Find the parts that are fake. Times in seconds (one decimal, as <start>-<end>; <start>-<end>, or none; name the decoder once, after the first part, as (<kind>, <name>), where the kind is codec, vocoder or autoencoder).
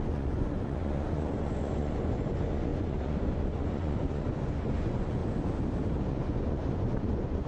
0.0-5.2 (vocoder, Vocos); 6.1-7.5